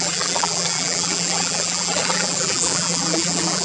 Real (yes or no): no